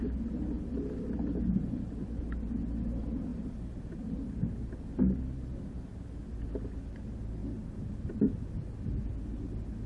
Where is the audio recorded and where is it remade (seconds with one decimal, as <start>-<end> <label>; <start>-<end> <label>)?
0.0-9.9 recorded